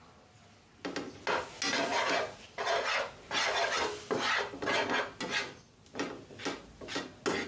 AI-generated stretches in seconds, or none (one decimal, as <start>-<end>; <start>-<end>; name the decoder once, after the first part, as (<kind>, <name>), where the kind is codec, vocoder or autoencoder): none